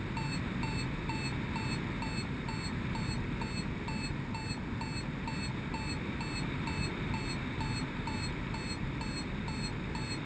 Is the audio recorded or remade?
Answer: recorded